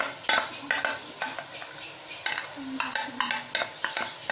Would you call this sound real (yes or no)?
yes